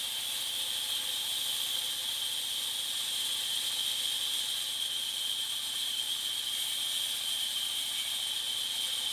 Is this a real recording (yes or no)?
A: yes